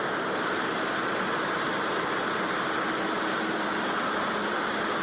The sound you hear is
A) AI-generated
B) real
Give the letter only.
B